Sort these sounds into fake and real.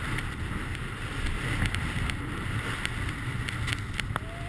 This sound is real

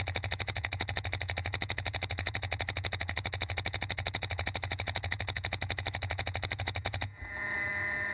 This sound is fake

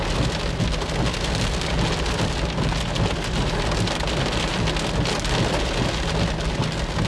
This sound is real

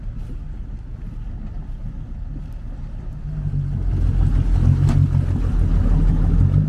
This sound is real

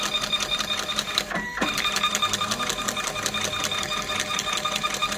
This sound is fake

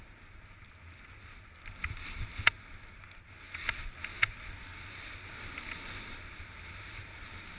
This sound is real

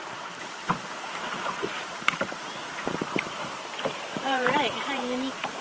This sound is fake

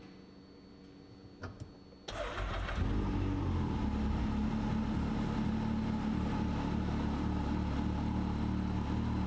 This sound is real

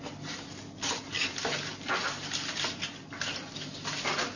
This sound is real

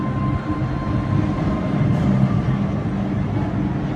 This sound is real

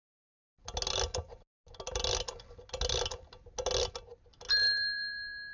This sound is real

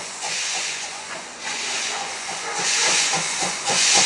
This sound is fake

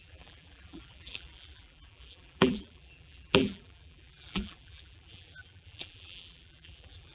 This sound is fake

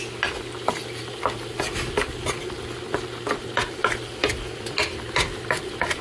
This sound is real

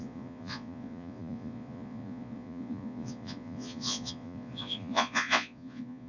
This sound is fake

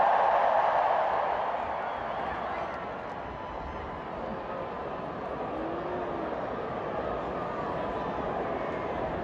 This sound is real